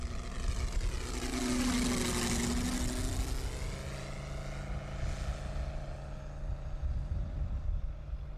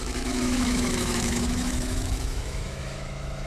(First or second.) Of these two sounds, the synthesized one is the second